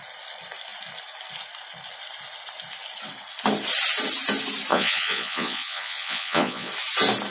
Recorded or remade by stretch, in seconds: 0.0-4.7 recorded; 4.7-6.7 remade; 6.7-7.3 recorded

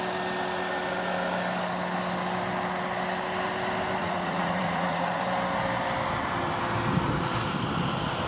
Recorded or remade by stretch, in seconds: 0.0-4.0 recorded; 4.0-5.2 remade; 5.2-8.3 recorded

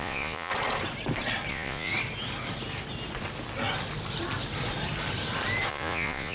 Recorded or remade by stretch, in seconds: 0.0-0.5 remade; 0.5-1.5 recorded; 1.5-1.9 remade; 1.9-5.7 recorded; 5.7-6.3 remade

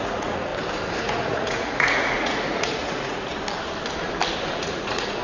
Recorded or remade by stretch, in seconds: 0.0-0.5 remade; 0.5-1.0 recorded; 1.0-3.3 remade; 3.3-4.5 recorded; 4.5-5.2 remade

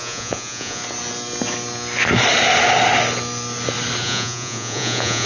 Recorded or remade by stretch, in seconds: 0.0-0.8 remade; 0.8-4.0 recorded; 4.0-5.3 remade

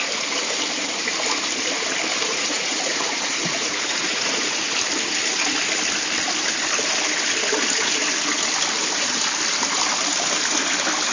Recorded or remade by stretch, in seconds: 0.0-2.3 recorded; 2.3-4.7 remade; 4.7-11.1 recorded